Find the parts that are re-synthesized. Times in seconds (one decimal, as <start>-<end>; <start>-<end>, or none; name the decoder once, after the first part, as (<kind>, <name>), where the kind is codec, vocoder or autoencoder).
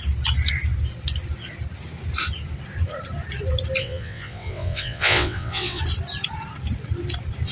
3.8-5.8 (vocoder, WaveNeXt)